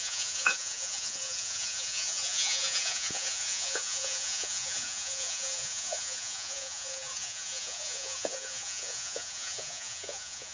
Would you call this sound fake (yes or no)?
yes